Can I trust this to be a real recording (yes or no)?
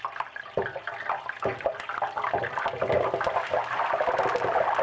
yes